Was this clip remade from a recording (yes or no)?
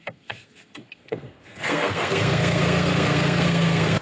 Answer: yes